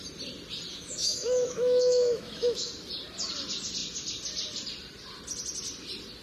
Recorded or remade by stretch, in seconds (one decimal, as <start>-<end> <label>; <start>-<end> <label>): 0.0-0.7 recorded; 0.7-2.7 remade; 2.7-6.2 recorded